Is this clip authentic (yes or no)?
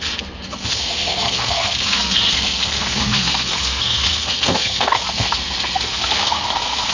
no